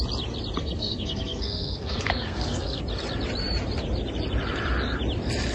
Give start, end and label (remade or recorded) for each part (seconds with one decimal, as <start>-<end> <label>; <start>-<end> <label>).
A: 0.0-0.6 recorded; 0.6-2.8 remade; 2.8-5.5 recorded